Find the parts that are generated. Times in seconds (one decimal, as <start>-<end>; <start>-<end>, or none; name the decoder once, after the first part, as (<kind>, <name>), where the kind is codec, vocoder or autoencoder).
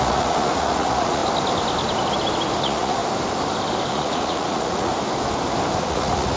0.0-1.2 (vocoder, Vocos); 2.6-3.0; 3.9-4.9; 5.8-6.4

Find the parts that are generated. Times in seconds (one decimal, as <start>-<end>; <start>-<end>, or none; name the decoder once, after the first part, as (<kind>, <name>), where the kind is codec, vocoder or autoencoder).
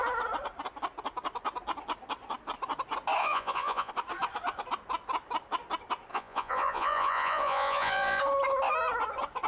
3.2-3.9 (vocoder, Vocos); 6.1-8.2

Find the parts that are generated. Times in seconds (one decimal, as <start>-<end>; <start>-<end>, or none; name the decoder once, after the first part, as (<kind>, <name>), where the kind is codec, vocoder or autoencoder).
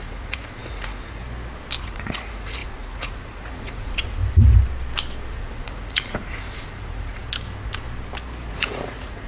0.0-1.2 (vocoder, Vocos); 1.8-4.2; 5.3-7.2; 8.5-9.3